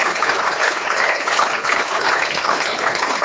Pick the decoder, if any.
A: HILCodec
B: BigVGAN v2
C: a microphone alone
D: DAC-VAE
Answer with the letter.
A